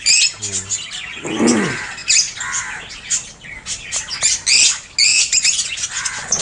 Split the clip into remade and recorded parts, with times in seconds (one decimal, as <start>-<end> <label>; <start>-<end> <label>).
0.0-5.1 recorded; 5.1-6.4 remade